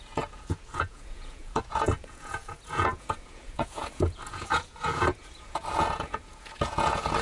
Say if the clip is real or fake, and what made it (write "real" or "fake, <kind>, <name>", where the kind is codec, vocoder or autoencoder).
fake, vocoder, Vocos